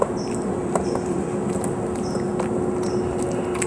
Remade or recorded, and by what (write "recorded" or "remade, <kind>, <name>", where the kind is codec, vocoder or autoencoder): recorded